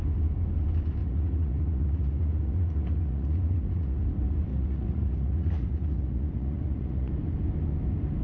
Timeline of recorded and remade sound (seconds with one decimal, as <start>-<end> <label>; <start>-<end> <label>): 0.0-1.0 recorded; 1.0-4.0 remade; 4.0-4.5 recorded; 4.5-7.1 remade; 7.1-8.2 recorded